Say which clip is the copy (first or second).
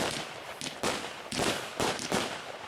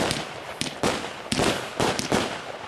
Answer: first